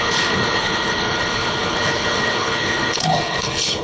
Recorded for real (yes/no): no